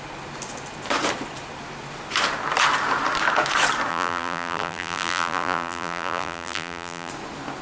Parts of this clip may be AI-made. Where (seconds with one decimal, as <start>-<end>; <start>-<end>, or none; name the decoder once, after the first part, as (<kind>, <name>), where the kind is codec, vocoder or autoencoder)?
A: 3.9-7.1 (vocoder, BigVGAN v2)